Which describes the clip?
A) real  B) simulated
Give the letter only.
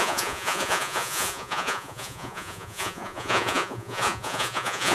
B